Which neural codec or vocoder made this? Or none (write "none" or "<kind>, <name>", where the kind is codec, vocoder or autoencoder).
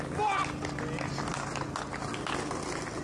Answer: none